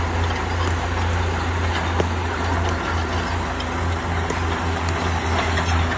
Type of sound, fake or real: real